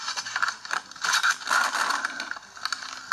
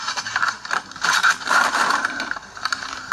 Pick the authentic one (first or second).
first